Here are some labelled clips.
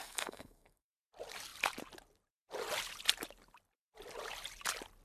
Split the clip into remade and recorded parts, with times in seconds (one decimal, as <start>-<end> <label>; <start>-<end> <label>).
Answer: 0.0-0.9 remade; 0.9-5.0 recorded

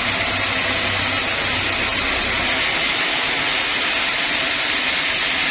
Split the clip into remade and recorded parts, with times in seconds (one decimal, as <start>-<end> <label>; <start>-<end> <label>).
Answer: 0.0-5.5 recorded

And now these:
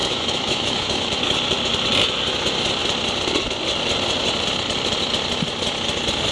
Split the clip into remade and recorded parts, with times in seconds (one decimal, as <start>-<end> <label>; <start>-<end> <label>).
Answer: 0.0-1.2 remade; 1.2-6.3 recorded

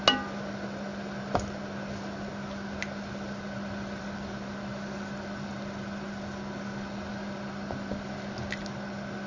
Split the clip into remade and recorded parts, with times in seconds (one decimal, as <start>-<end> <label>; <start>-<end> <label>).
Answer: 0.0-9.3 recorded

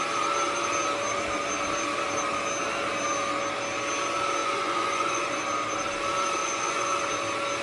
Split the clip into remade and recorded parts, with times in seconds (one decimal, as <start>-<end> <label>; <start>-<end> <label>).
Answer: 0.0-4.4 recorded; 4.4-5.4 remade; 5.4-6.4 recorded; 6.4-7.0 remade; 7.0-7.6 recorded

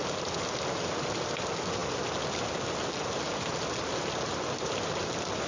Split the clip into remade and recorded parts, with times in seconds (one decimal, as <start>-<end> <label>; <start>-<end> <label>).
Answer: 0.0-5.5 recorded

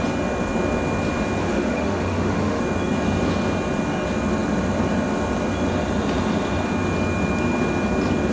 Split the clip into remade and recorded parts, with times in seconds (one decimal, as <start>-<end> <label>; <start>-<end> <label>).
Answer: 0.0-1.4 recorded; 1.4-2.6 remade; 2.6-8.3 recorded